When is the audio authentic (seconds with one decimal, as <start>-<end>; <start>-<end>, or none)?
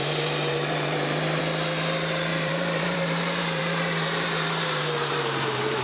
1.4-2.3